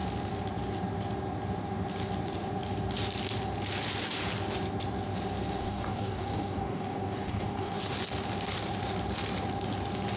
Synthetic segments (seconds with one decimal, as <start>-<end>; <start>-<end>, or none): 5.6-7.8